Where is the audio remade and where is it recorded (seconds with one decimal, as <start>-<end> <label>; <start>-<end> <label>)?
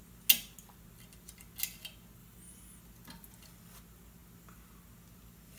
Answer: 0.0-2.2 recorded; 2.2-2.8 remade; 2.8-5.6 recorded